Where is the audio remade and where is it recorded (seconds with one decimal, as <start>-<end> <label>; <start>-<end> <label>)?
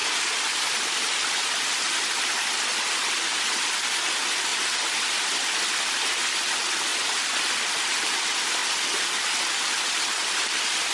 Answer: 0.0-4.5 recorded; 4.5-6.0 remade; 6.0-6.9 recorded; 6.9-8.2 remade; 8.2-10.9 recorded